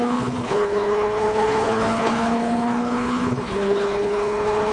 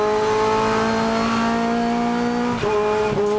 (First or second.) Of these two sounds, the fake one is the first